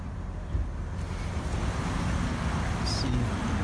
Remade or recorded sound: recorded